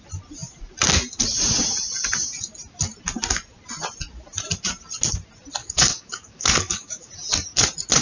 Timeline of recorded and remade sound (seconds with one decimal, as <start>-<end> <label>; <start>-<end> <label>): 0.0-5.6 recorded; 5.6-7.1 remade; 7.1-8.0 recorded